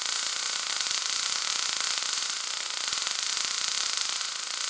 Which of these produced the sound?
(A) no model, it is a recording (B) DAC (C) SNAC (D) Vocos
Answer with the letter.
A